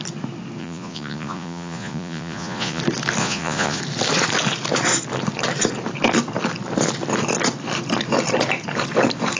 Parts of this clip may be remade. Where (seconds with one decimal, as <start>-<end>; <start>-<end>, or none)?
0.6-2.8; 3.2-3.8